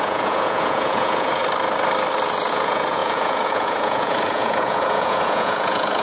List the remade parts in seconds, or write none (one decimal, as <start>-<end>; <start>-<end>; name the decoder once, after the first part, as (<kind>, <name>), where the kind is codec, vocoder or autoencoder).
0.0-1.4 (vocoder, Vocos); 2.5-6.0